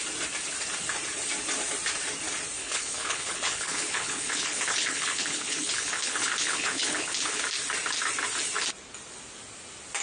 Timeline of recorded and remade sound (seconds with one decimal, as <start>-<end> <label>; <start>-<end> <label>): 0.0-2.6 recorded; 2.6-7.4 remade; 7.4-10.0 recorded